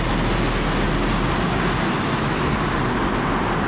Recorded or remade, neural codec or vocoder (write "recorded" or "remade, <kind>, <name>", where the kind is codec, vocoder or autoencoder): recorded